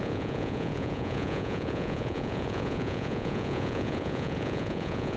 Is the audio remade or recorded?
remade